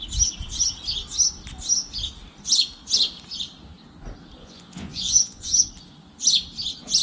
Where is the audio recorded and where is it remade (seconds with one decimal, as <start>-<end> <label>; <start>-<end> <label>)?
0.0-4.4 recorded; 4.4-5.7 remade; 5.7-7.0 recorded